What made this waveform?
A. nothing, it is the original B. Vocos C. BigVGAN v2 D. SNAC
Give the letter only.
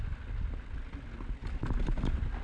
A